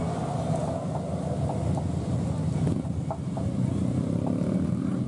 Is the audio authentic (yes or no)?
yes